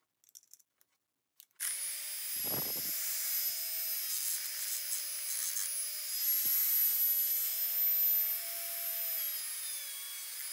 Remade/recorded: recorded